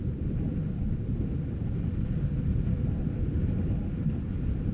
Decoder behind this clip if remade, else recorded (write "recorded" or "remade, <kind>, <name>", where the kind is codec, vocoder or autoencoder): recorded